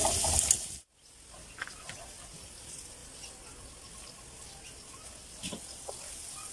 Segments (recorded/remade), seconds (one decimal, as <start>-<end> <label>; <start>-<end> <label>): 0.0-6.5 recorded